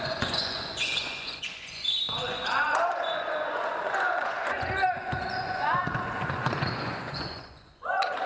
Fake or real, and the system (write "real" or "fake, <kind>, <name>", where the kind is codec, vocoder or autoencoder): fake, vocoder, Vocos